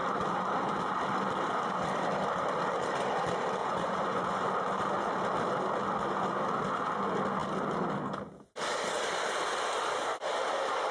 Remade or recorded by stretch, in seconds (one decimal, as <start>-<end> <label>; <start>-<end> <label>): 0.0-3.6 recorded; 3.6-4.4 remade; 4.4-10.9 recorded